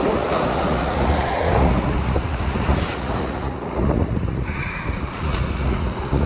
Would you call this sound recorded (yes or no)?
no